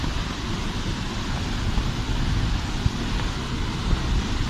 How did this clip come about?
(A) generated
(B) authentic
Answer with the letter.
B